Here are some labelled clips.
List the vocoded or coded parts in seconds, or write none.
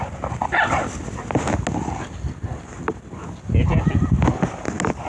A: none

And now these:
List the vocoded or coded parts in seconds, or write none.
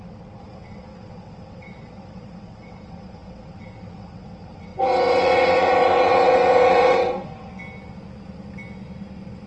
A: 0.0-7.5 (vocoder, WaveNeXt)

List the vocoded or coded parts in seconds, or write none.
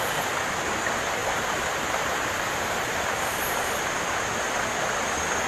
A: 1.2-4.5 (vocoder, BigVGAN v2)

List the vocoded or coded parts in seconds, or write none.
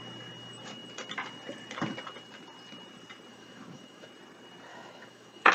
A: 3.3-4.1 (autoencoder, DAC-VAE); 4.7-5.5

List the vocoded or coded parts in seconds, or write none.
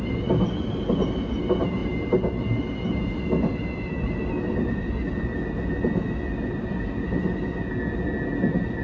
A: none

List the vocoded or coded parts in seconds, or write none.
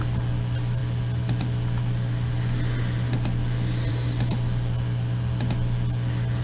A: none